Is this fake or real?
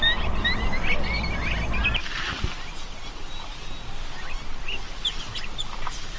real